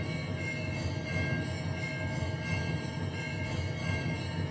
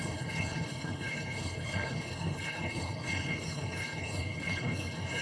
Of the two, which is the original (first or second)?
first